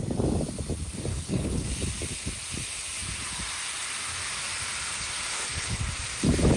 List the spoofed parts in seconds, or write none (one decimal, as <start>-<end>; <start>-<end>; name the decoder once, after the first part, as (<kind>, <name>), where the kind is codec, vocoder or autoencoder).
1.1-1.7 (codec, HILCodec); 5.3-5.8